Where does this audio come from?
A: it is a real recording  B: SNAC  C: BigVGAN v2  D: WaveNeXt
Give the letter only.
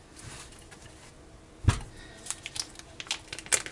A